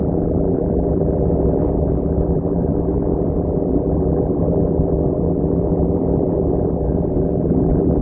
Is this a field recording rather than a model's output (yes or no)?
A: no